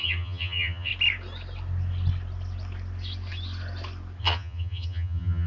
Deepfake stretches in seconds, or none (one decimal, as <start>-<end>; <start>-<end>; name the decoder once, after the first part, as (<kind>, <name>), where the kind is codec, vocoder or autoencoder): 0.0-0.9 (vocoder, HiFi-GAN); 4.2-5.5